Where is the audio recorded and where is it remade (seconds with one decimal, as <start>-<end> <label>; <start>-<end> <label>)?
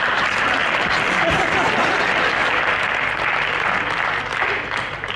0.0-5.2 recorded